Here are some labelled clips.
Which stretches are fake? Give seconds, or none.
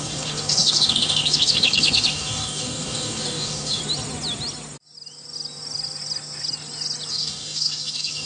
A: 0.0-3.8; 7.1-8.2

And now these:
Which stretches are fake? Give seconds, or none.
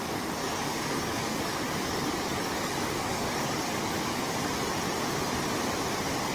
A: 0.4-4.2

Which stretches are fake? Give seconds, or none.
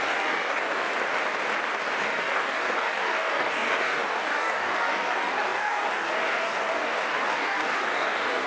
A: 0.0-0.9; 2.0-8.5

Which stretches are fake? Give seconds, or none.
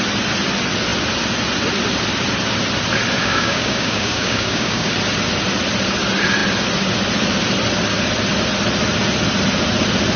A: 3.2-4.9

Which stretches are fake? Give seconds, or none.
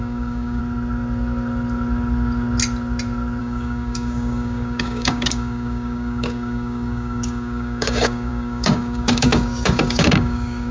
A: 0.0-0.6; 3.4-10.7